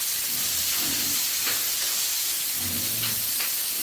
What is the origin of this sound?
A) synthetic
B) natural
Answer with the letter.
B